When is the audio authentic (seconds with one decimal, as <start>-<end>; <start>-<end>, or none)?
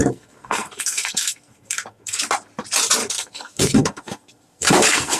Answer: 2.2-3.0